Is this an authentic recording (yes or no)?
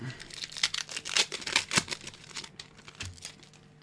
yes